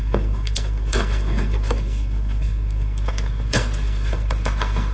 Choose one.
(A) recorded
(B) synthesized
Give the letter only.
B